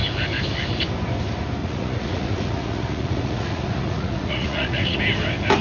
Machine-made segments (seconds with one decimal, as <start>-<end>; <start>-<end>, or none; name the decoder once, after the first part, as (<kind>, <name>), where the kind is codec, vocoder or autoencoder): 1.6-5.0 (vocoder, Vocos)